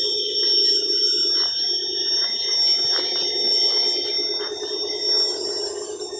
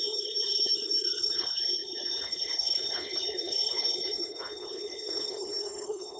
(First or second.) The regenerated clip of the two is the second